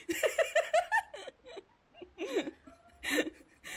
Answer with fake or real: real